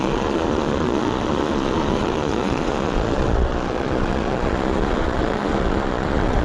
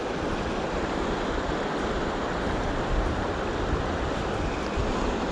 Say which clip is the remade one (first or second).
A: first